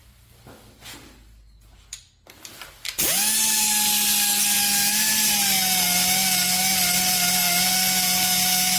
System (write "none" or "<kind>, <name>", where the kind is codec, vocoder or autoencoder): none